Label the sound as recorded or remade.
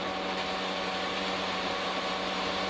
recorded